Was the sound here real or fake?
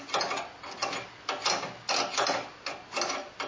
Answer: real